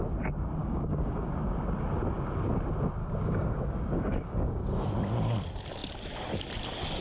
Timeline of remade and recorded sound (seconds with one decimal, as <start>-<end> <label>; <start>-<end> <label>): 0.0-0.6 recorded; 0.6-1.3 remade; 1.3-3.0 recorded; 3.0-4.8 remade; 4.8-7.0 recorded